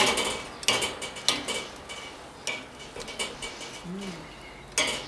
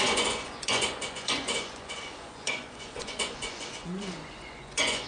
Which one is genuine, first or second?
first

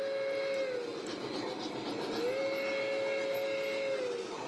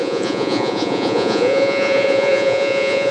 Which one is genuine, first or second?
first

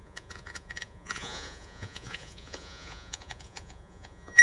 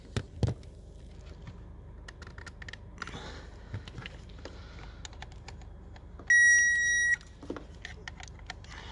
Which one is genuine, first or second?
second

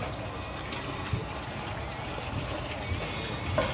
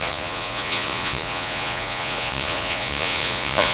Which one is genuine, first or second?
first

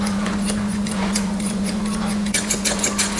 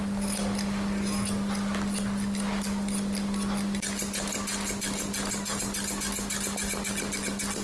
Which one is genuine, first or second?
second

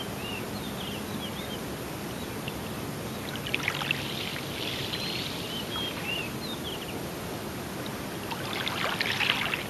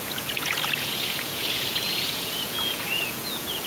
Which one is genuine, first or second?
first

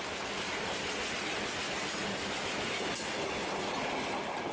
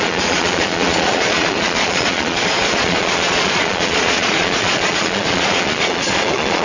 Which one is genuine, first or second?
first